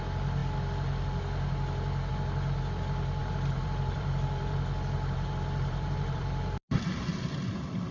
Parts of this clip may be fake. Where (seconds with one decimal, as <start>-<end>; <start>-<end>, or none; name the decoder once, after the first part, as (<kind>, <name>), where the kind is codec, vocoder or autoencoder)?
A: 3.2-6.8 (vocoder, BigVGAN v2)